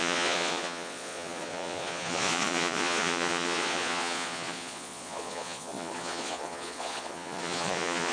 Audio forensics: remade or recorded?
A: remade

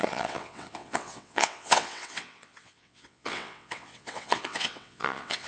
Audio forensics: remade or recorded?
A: remade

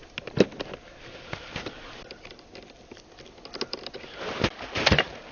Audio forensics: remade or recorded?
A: recorded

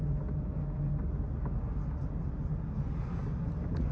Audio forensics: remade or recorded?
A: recorded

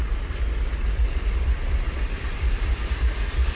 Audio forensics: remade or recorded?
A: recorded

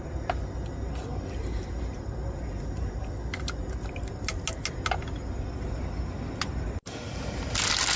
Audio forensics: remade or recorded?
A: recorded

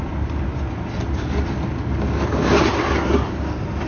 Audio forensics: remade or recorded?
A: recorded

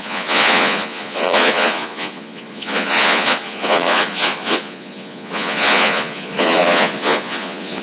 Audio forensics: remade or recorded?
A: remade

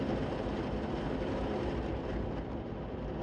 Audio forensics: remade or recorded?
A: remade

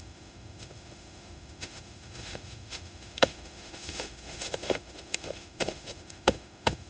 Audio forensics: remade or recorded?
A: remade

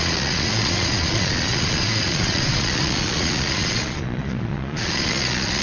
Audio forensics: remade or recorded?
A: remade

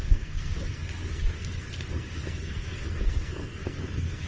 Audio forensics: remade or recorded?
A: remade